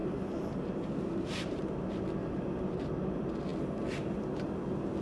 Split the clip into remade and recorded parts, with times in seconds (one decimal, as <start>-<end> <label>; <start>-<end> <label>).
0.0-1.6 remade; 1.6-2.2 recorded; 2.2-2.9 remade; 2.9-5.0 recorded